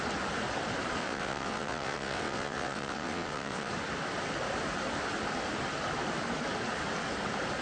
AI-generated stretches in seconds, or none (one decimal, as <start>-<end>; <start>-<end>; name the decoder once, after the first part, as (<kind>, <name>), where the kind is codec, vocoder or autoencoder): 1.0-3.7 (vocoder, WaveNeXt)

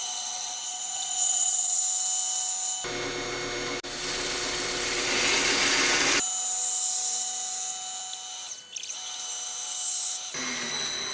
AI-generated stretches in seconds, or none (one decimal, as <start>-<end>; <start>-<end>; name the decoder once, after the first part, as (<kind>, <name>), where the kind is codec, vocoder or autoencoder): 0.0-1.8 (vocoder, WaveNeXt)

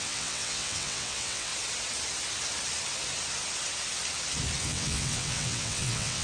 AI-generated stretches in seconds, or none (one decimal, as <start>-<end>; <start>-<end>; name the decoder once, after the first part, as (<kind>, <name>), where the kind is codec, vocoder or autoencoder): 0.0-1.5 (vocoder, WaveNeXt); 4.6-6.2

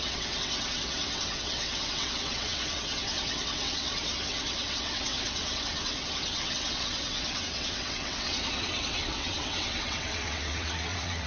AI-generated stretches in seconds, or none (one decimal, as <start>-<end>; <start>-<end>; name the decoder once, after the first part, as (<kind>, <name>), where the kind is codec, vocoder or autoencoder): 0.0-11.3 (vocoder, WaveNeXt)

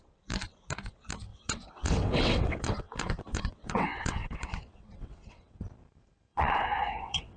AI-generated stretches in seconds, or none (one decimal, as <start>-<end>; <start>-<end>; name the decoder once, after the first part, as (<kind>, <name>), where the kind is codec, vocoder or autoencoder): 1.3-5.6 (vocoder, WaveNeXt); 6.3-7.4

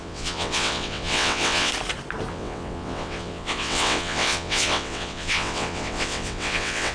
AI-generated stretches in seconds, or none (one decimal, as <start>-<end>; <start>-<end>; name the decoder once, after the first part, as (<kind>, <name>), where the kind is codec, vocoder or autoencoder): 0.0-1.7 (vocoder, WaveNeXt); 2.3-6.9